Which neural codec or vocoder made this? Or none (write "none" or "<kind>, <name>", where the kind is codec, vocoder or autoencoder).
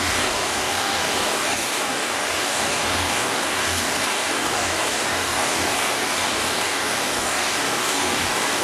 codec, DAC